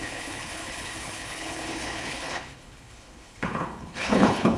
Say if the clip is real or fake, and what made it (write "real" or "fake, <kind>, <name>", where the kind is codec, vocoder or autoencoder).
fake, codec, HILCodec